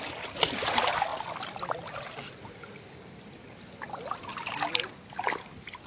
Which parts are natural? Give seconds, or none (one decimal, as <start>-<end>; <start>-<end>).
0.0-5.9